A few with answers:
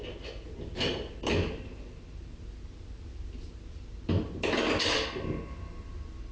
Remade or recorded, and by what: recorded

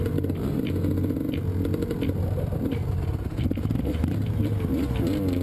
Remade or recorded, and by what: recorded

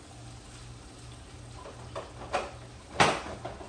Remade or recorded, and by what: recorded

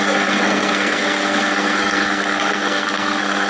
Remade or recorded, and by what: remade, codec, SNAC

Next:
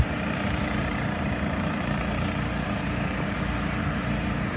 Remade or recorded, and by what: remade, vocoder, BigVGAN v2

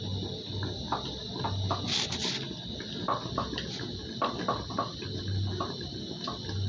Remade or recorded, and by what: recorded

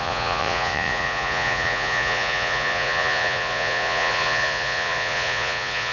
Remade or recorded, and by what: remade, vocoder, Vocos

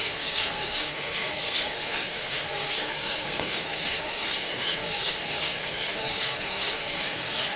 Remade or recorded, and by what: remade, codec, SNAC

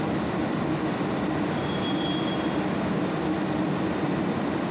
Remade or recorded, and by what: recorded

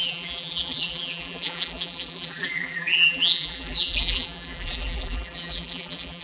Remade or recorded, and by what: remade, vocoder, BigVGAN v2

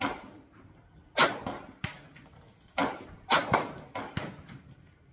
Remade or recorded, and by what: recorded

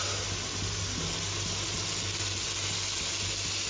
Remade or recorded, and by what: recorded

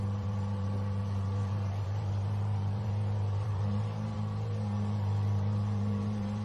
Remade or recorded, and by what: remade, vocoder, BigVGAN v2